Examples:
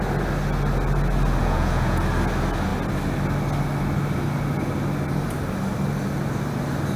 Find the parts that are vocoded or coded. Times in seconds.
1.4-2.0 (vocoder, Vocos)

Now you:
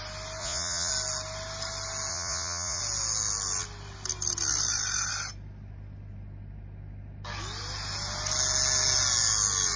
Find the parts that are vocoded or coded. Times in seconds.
0.4-0.9 (vocoder, Vocos); 2.1-2.8

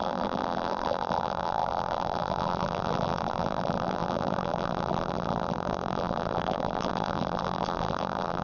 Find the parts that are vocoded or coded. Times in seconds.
0.0-8.4 (vocoder, BigVGAN v2)

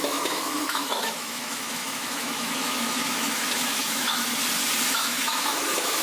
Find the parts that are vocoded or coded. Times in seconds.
0.0-4.3 (autoencoder, DAC-VAE); 4.9-6.0

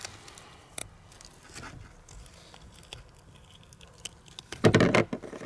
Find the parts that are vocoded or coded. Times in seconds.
none

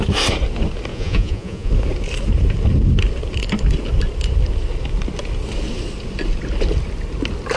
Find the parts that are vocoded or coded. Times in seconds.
0.9-1.7 (vocoder, Vocos)